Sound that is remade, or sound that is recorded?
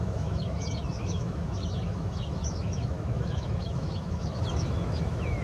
remade